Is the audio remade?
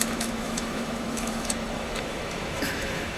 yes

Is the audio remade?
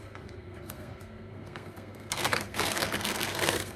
yes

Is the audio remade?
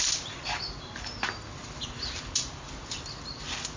no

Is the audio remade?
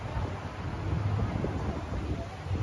no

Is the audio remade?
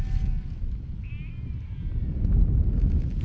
no